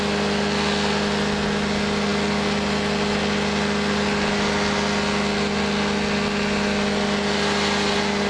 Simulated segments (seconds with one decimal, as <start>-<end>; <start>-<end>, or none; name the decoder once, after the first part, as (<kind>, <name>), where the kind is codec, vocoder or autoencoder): none